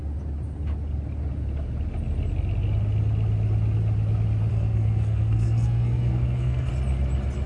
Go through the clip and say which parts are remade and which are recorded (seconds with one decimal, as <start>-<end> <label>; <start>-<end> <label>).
0.0-4.5 recorded; 4.5-6.7 remade; 6.7-7.5 recorded